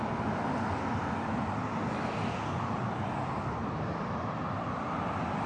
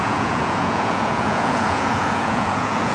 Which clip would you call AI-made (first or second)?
second